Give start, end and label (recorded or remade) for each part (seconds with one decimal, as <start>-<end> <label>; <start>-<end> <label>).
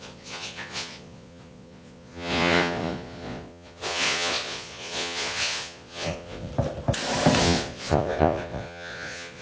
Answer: 0.0-6.5 remade; 6.5-7.4 recorded; 7.4-9.4 remade